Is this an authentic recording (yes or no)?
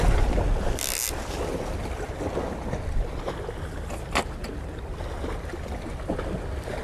yes